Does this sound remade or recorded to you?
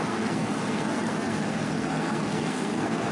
remade